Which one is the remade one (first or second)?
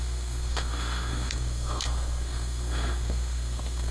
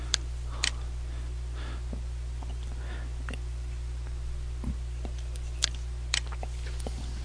first